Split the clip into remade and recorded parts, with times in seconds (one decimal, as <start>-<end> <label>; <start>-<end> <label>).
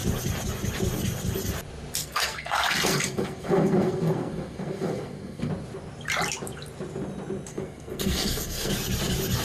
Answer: 0.0-2.0 recorded; 2.0-5.5 remade; 5.5-7.5 recorded; 7.5-8.7 remade; 8.7-9.4 recorded